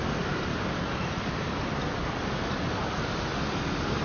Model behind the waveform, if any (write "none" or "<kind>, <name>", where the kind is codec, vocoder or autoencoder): none